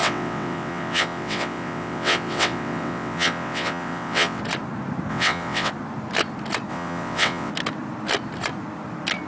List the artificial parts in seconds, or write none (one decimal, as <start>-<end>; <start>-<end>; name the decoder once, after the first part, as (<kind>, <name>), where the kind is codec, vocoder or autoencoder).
0.0-4.4 (vocoder, WaveNeXt); 5.1-5.7; 6.7-7.5